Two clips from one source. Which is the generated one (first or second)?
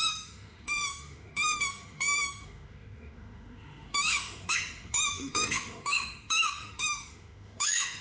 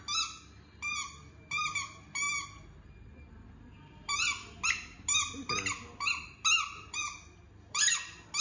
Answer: first